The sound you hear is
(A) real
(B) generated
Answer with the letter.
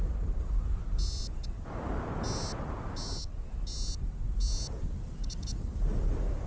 A